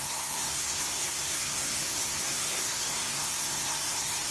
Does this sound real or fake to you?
fake